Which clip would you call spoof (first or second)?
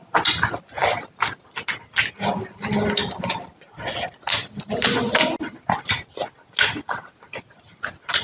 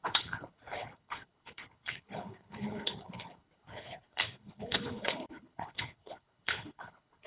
second